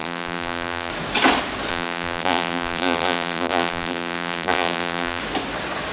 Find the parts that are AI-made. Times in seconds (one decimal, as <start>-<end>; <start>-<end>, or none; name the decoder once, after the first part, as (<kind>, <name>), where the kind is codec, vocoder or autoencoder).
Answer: 0.0-0.9 (vocoder, BigVGAN v2); 1.7-5.2